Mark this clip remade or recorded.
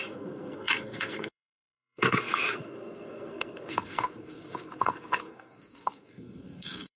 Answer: remade